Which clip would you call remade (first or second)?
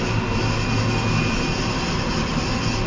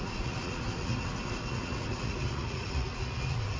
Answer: second